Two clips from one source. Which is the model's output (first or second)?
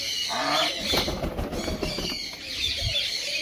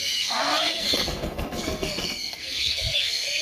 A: second